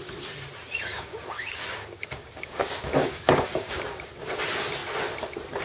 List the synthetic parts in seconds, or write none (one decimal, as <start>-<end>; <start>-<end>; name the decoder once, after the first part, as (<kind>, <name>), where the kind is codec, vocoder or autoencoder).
0.9-4.3 (codec, DAC)